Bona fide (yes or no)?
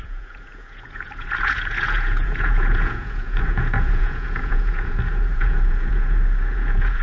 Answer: no